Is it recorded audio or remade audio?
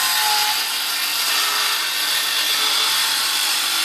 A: recorded